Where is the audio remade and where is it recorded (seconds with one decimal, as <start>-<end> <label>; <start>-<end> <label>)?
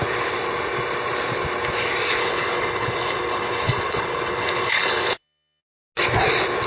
0.0-2.2 recorded; 2.2-5.6 remade; 5.6-6.7 recorded